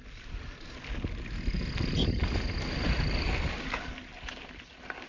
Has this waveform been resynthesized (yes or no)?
no